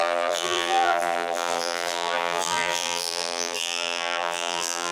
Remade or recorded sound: remade